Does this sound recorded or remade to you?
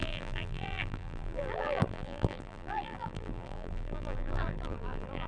remade